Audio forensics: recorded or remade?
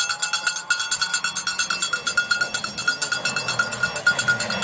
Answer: recorded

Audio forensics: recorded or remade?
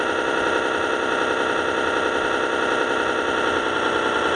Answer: recorded